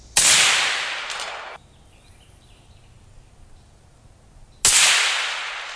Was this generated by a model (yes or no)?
no